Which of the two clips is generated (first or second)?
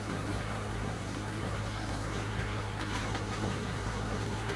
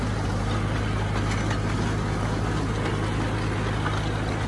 first